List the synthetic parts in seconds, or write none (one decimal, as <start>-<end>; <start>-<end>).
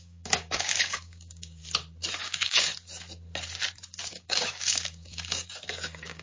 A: 0.0-1.6; 2.2-2.7; 4.1-6.2